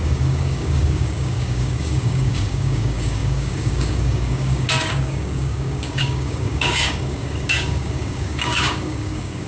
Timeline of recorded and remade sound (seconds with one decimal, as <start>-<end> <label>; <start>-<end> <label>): 0.0-9.5 remade